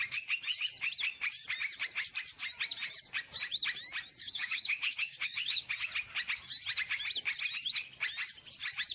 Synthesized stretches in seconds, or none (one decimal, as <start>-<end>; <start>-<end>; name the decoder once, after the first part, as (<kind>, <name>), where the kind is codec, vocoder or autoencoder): 4.2-5.7 (codec, DAC)